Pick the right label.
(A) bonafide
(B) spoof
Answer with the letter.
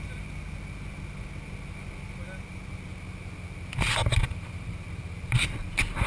A